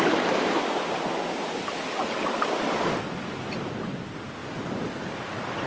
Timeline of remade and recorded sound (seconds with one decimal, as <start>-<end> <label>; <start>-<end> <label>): 0.0-5.7 recorded